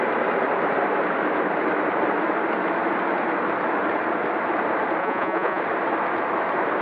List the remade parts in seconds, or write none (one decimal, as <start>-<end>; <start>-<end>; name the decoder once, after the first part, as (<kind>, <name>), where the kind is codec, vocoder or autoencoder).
5.0-5.6 (vocoder, Vocos)